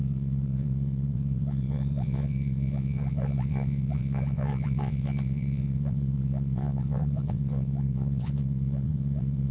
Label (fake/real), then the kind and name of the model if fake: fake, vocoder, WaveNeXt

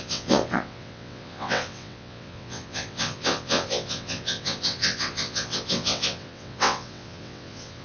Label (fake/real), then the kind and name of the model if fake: fake, vocoder, WaveNeXt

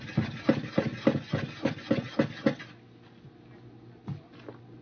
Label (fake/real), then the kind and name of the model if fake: real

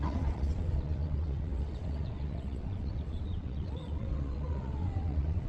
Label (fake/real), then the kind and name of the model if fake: fake, vocoder, WaveNeXt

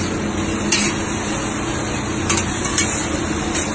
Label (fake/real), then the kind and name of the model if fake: real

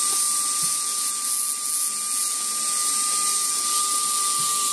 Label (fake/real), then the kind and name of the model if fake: real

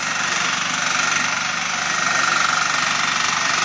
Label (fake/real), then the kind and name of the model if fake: real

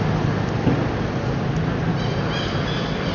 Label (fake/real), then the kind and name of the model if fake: real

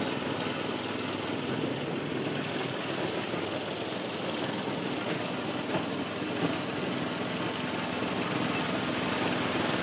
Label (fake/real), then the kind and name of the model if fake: real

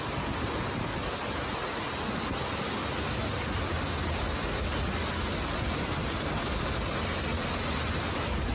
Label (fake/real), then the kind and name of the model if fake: real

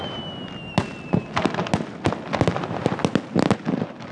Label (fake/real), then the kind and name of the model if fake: real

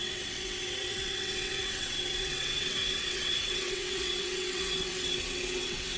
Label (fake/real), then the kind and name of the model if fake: fake, vocoder, WaveNeXt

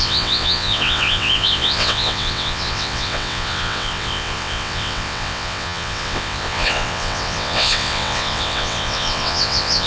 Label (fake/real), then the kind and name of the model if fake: fake, vocoder, WaveNeXt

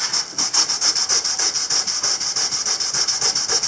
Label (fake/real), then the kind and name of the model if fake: real